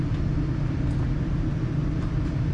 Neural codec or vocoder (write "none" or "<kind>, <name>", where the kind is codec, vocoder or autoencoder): vocoder, BigVGAN v2